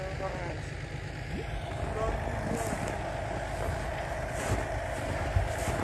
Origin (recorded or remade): recorded